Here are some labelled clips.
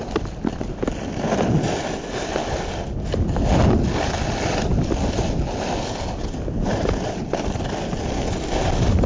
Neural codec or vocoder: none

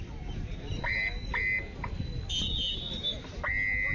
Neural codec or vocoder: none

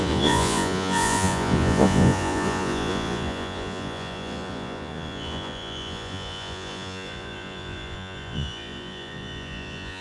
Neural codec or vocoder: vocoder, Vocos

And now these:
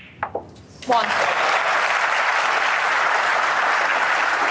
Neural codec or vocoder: none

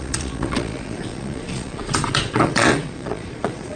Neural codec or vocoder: vocoder, Vocos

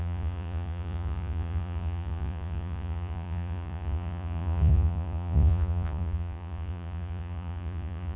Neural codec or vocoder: vocoder, Vocos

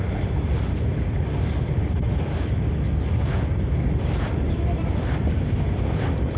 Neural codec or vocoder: none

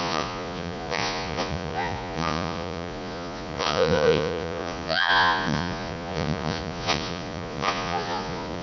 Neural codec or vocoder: vocoder, Vocos